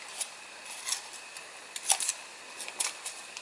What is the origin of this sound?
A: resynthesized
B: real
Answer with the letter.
B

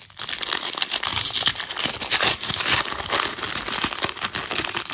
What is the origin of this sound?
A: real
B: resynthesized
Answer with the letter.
A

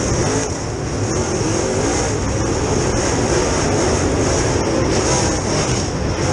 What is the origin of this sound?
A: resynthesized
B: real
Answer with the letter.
B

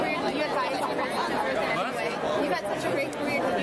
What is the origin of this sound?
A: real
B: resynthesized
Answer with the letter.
A